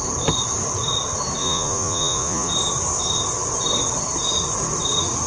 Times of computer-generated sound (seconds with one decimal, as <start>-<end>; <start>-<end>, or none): 1.4-2.5